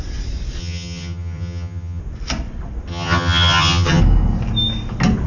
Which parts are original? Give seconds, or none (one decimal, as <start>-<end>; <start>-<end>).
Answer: 0.0-0.6; 2.0-2.9; 4.0-5.3

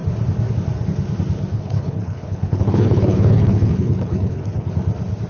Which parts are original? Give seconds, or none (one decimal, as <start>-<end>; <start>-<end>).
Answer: 0.0-1.5; 4.7-5.3

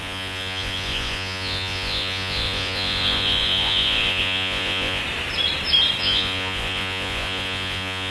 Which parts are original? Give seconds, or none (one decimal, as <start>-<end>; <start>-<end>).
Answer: 5.0-6.0

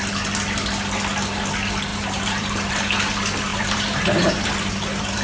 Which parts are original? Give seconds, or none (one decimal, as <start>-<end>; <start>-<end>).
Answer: 0.0-1.9; 2.7-3.5; 4.5-5.2

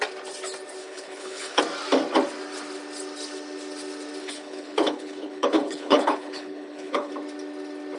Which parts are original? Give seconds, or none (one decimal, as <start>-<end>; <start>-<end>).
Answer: 0.0-0.8; 1.6-4.2; 7.1-8.0

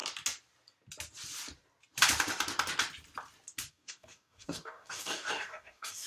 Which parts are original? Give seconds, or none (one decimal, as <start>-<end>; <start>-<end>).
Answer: 0.0-3.7